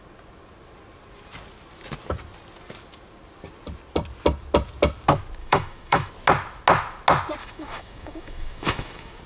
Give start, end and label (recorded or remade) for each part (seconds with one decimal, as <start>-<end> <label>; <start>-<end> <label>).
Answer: 0.0-5.4 recorded; 5.4-6.1 remade; 6.1-7.4 recorded; 7.4-9.2 remade